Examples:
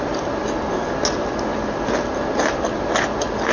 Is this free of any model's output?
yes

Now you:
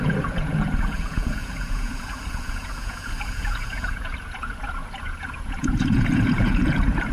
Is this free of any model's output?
no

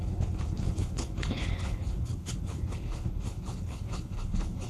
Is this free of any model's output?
no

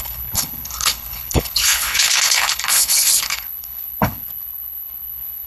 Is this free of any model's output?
no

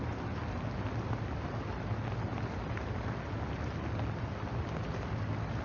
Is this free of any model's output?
yes